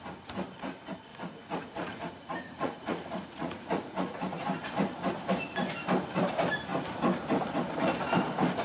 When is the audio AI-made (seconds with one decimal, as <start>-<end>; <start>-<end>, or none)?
1.1-4.4